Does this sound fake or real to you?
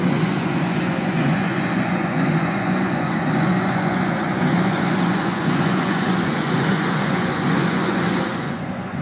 fake